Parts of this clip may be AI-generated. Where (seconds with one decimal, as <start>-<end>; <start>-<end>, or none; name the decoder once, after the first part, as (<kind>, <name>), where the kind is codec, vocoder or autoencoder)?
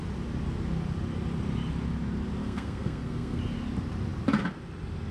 2.4-3.4 (codec, SNAC)